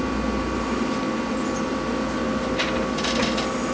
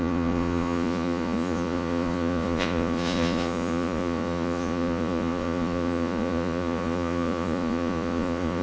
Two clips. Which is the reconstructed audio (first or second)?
second